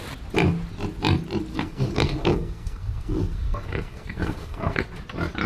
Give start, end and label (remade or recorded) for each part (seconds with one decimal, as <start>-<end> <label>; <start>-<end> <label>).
0.0-1.5 recorded; 1.5-4.8 remade; 4.8-5.5 recorded